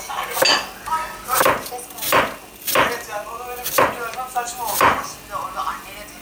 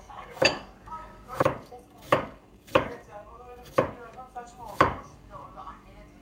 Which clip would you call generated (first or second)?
second